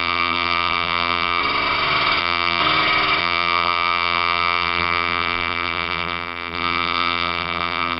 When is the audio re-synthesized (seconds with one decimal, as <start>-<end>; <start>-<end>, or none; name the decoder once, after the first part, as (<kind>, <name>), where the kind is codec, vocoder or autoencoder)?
0.0-1.4 (vocoder, BigVGAN v2); 2.2-2.6; 3.2-8.0